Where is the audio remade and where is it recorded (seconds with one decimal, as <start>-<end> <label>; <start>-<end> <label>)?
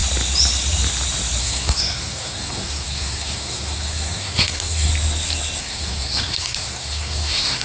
0.0-1.4 recorded; 1.4-4.9 remade; 4.9-5.6 recorded; 5.6-7.6 remade